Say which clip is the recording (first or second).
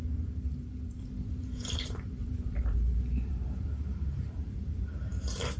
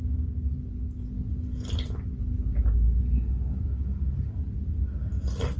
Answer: second